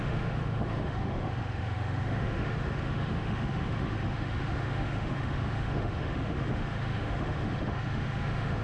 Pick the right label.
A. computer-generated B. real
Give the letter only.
A